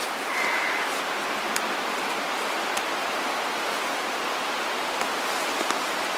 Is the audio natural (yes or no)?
yes